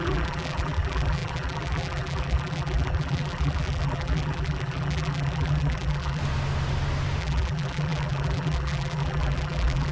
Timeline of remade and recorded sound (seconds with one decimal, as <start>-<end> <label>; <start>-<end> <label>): 0.0-6.2 remade; 6.2-7.2 recorded; 7.2-9.9 remade